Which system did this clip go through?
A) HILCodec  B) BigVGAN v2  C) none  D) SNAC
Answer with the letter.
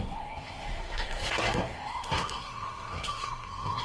D